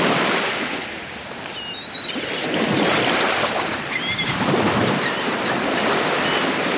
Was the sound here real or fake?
real